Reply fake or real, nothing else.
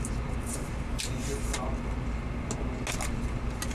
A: real